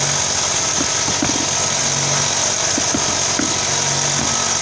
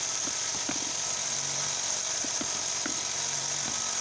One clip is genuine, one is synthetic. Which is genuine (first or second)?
first